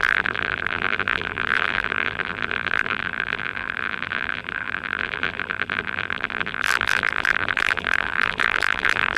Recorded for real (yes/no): no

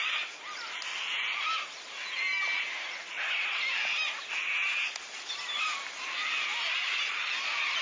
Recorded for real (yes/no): yes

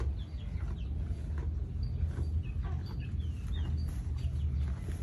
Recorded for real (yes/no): yes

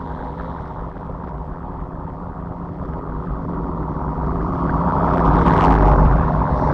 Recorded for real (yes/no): no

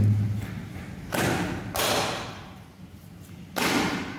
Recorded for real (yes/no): yes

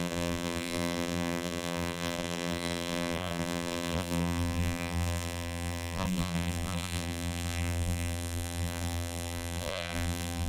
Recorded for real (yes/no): no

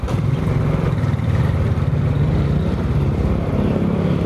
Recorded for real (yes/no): no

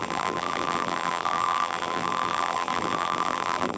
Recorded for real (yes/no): no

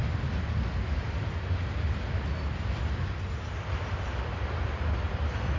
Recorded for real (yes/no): yes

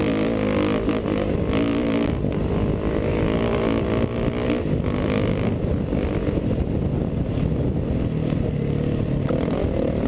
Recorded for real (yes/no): yes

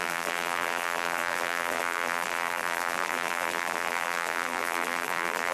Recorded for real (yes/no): no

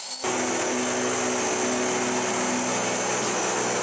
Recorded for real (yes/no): yes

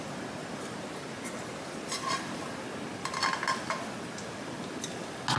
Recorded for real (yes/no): yes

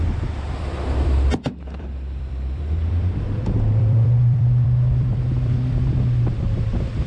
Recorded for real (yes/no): no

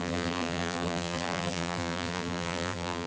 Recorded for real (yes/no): no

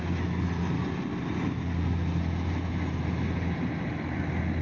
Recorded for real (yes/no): yes